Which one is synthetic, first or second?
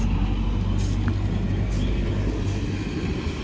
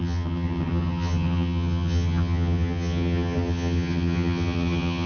second